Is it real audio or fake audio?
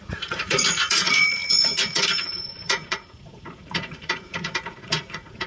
fake